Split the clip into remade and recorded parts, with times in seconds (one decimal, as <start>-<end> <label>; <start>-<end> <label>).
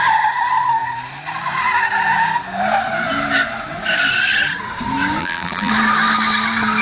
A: 0.0-5.2 recorded; 5.2-5.7 remade; 5.7-6.8 recorded